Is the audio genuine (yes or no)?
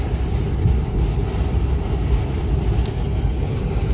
yes